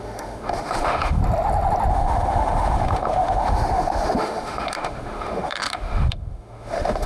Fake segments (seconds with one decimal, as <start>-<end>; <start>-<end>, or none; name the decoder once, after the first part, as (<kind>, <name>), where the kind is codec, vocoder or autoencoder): 0.0-1.2 (autoencoder, DAC-VAE); 1.9-7.1